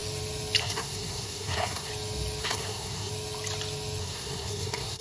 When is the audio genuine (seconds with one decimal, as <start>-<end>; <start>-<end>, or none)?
0.0-0.6; 1.9-2.4; 3.1-4.0

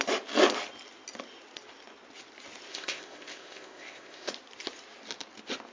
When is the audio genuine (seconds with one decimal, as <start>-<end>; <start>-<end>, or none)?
0.0-2.7; 4.3-5.7

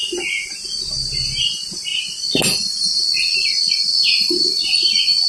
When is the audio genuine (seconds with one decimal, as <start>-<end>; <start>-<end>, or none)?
0.0-5.3

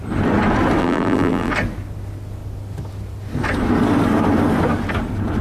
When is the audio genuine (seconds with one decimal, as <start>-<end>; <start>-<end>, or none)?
0.0-0.8; 1.5-5.4

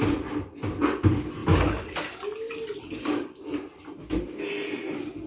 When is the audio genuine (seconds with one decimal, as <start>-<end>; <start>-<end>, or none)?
0.0-5.3

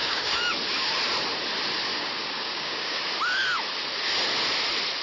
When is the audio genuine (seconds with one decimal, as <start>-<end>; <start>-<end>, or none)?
0.5-1.9; 3.0-5.0